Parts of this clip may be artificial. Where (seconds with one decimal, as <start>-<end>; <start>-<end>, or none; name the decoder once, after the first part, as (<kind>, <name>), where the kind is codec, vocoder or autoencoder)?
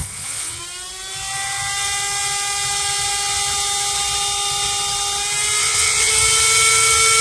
0.0-0.6 (vocoder, WaveNeXt); 5.6-6.1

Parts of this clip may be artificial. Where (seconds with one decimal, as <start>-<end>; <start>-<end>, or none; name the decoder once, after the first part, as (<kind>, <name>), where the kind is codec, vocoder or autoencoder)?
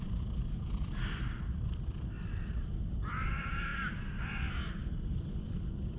none